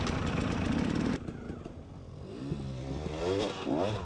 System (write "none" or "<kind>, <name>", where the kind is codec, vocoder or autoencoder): none